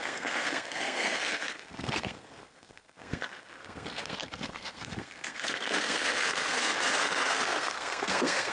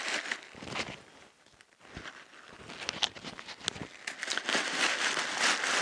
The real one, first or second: second